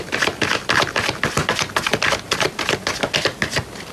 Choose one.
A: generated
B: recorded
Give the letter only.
B